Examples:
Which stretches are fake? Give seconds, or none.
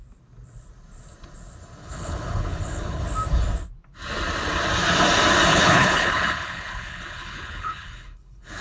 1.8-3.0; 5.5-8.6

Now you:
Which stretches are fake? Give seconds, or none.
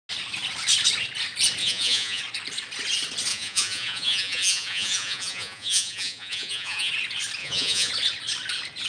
1.6-2.2; 3.3-6.9; 7.4-7.9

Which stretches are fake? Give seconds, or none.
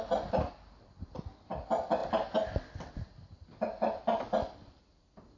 none